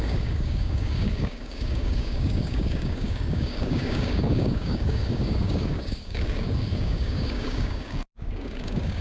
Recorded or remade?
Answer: remade